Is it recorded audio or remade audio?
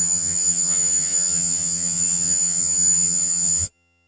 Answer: remade